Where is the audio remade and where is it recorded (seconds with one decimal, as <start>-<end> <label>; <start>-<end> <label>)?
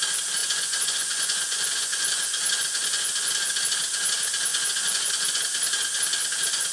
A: 0.0-0.4 recorded; 0.4-3.6 remade; 3.6-4.5 recorded; 4.5-5.4 remade; 5.4-6.7 recorded